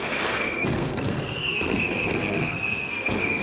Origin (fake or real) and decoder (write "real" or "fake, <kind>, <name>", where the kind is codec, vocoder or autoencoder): fake, codec, SNAC